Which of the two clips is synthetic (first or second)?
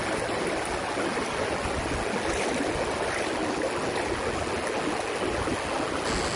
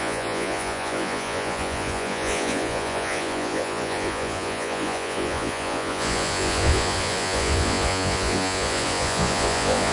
second